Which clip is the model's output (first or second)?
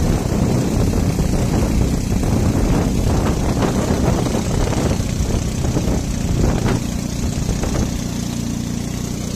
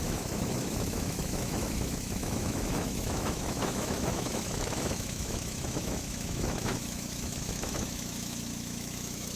second